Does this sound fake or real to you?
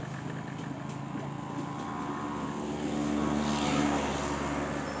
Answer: real